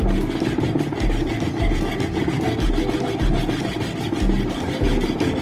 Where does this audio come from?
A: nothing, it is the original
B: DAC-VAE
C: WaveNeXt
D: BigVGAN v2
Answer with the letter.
A